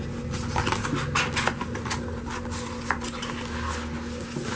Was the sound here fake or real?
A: real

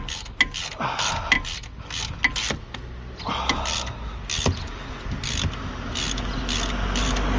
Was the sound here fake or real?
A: real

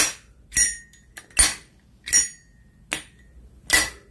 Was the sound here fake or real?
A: real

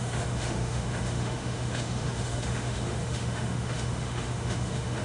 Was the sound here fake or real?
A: fake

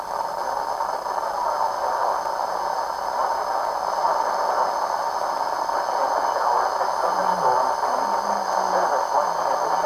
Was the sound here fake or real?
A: real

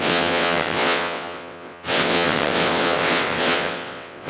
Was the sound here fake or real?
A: fake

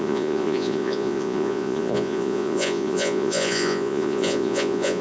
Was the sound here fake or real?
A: fake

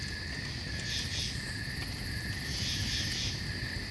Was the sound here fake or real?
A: real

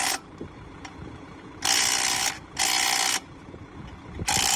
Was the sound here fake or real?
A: real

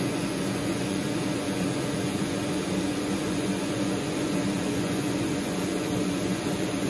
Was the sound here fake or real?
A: fake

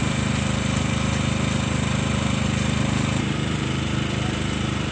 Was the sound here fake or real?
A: fake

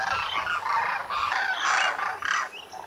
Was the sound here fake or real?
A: real